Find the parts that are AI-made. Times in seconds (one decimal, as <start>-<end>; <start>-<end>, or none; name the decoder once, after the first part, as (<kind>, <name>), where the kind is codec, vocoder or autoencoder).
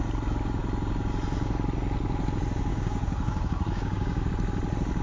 2.7-4.3 (codec, DAC)